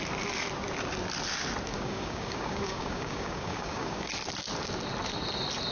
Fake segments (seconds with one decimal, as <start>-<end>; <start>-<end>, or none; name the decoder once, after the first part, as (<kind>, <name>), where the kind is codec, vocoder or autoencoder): 1.7-4.1 (codec, DAC)